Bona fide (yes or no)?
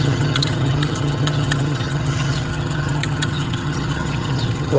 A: no